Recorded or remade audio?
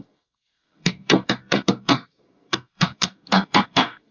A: remade